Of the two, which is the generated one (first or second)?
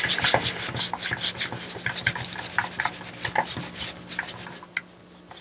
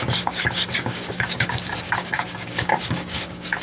second